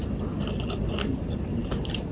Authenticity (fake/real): real